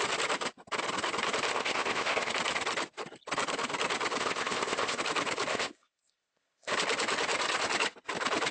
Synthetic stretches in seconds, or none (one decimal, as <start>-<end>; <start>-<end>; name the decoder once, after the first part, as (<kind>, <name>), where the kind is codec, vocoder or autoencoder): 1.5-2.3 (codec, ZipCodec); 4.2-5.0; 5.5-6.7